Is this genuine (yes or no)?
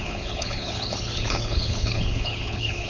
no